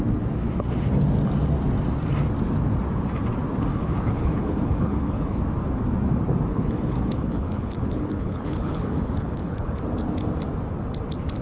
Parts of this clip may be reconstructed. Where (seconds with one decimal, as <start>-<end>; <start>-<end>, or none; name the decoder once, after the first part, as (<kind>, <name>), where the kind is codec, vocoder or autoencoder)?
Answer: 3.7-5.4 (codec, HILCodec); 6.5-9.8